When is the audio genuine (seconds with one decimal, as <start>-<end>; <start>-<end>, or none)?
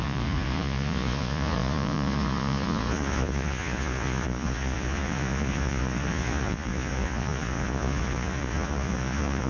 none